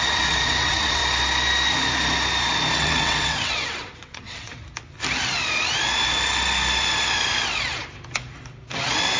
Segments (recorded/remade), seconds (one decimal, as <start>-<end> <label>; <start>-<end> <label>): 0.0-1.0 remade; 1.0-2.7 recorded; 2.7-4.5 remade; 4.5-9.2 recorded